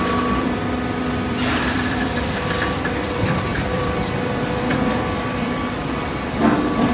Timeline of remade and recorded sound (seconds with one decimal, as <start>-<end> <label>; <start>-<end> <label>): 0.0-6.9 remade